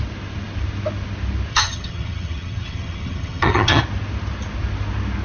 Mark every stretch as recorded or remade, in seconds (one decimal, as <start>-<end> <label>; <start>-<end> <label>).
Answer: 0.0-1.5 recorded; 1.5-3.8 remade; 3.8-5.2 recorded